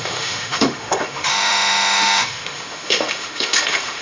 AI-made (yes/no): yes